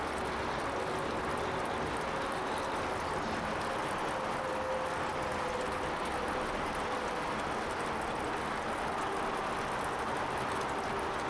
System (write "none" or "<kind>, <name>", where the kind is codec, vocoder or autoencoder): none